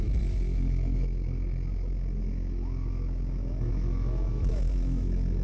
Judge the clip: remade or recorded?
remade